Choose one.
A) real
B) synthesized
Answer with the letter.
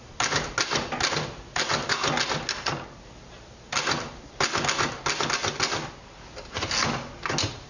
A